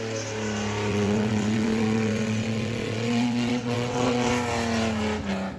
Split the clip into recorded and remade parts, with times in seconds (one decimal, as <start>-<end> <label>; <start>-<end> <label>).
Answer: 0.0-0.9 recorded; 0.9-4.3 remade; 4.3-5.6 recorded